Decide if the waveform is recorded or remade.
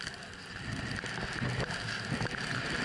recorded